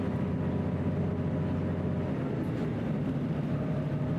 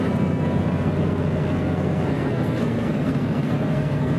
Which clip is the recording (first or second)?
first